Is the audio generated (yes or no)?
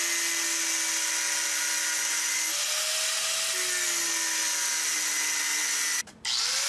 no